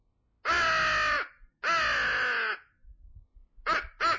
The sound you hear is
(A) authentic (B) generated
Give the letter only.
A